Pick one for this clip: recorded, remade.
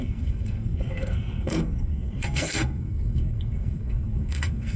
remade